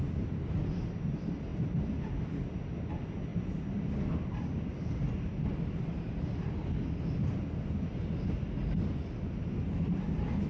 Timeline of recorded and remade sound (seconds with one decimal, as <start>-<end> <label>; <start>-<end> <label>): 0.0-10.5 recorded